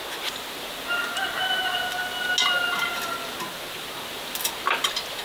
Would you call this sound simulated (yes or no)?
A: no